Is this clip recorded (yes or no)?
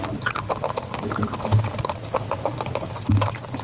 yes